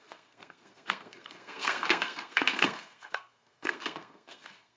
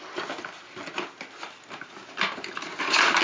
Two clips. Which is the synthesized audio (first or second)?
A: first